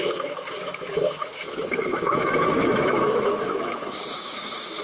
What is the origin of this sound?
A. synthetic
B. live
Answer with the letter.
A